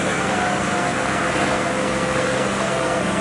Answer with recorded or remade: remade